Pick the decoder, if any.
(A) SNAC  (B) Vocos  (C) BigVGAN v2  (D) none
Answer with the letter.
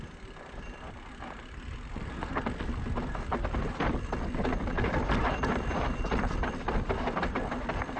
D